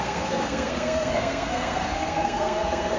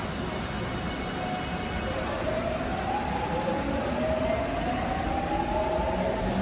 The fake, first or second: first